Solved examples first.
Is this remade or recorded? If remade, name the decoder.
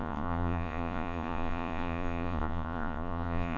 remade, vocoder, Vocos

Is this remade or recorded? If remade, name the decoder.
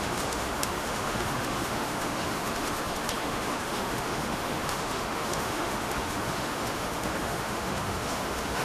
remade, autoencoder, DAC-VAE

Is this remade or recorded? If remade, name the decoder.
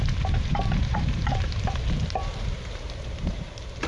remade, vocoder, BigVGAN v2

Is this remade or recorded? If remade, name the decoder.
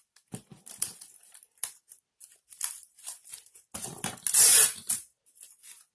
recorded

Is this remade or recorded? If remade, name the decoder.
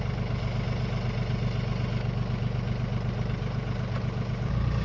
recorded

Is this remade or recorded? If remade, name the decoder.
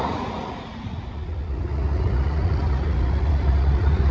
remade, vocoder, Vocos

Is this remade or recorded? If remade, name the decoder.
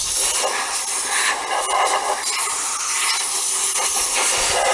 recorded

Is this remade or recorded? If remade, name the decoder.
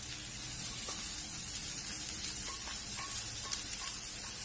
recorded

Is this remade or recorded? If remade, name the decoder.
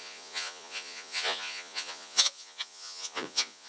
remade, vocoder, Vocos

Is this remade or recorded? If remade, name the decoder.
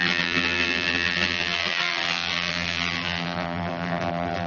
remade, vocoder, BigVGAN v2